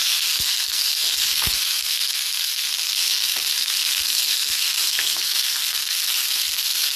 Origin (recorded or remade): remade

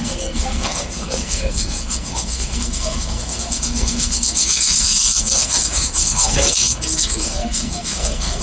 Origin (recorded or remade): remade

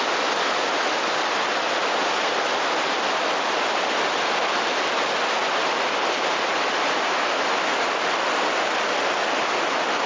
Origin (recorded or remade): recorded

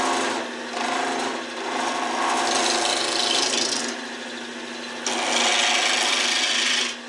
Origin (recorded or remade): recorded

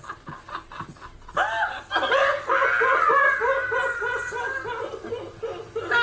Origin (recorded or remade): recorded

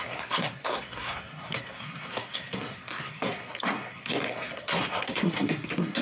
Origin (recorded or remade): remade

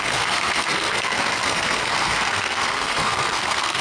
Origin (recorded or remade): remade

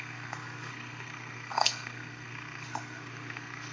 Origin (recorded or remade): remade